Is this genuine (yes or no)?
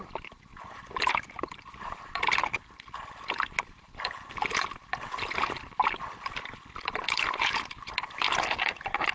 yes